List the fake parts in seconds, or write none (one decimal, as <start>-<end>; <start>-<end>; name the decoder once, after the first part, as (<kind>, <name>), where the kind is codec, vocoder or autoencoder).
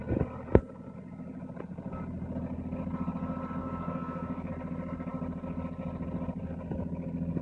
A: 3.6-4.5 (codec, DAC)